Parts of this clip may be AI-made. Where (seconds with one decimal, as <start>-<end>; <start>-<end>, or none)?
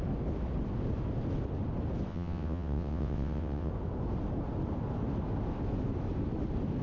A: 2.1-3.7